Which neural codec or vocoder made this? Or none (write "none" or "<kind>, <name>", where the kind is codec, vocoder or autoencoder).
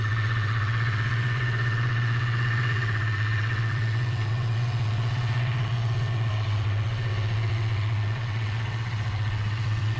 vocoder, WaveNeXt